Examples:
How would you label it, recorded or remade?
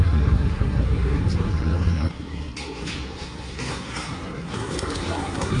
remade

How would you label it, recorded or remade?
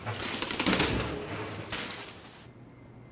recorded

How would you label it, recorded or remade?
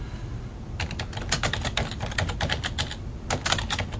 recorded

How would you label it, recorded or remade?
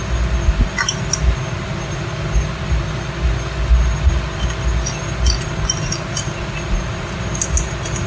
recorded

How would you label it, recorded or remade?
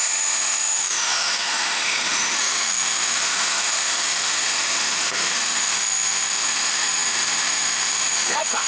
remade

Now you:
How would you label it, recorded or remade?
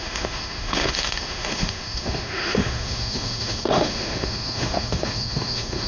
remade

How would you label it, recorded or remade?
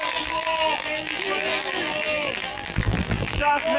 remade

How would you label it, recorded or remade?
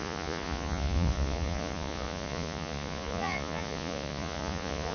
remade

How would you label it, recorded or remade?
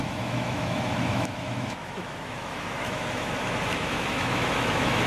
remade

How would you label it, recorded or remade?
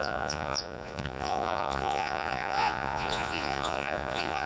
remade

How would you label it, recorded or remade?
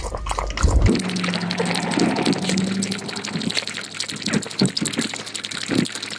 recorded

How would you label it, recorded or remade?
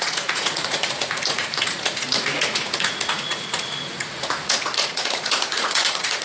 remade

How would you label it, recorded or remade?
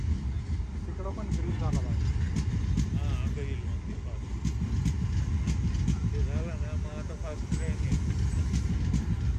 recorded